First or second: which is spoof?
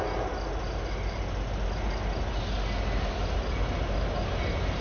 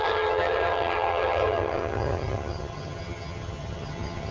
second